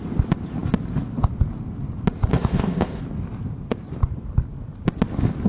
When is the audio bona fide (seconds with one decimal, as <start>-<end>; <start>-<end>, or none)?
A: 0.0-2.3; 3.0-5.5